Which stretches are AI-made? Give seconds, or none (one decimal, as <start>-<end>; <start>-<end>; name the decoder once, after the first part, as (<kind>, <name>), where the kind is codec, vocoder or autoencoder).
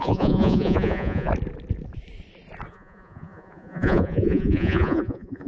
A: 0.0-1.3 (vocoder, Vocos); 2.7-5.5